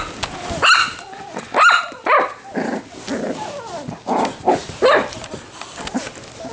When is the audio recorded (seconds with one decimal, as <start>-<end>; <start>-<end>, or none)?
0.0-4.6; 5.2-6.5